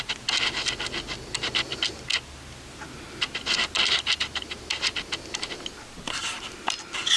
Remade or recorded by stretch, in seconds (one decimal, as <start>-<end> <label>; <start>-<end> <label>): 0.0-7.2 recorded